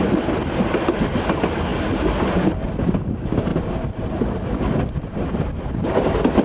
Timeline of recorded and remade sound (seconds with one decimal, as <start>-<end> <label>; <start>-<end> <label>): 0.0-3.5 recorded; 3.5-4.3 remade; 4.3-6.4 recorded